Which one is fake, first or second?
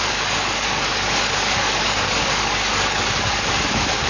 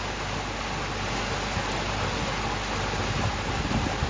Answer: first